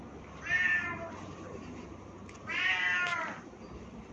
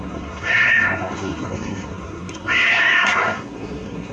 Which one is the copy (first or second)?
second